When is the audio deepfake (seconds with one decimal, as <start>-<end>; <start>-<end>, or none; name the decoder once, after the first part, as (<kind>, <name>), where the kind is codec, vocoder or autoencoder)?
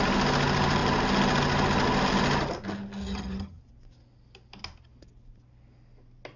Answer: 3.0-3.6 (vocoder, HiFi-GAN)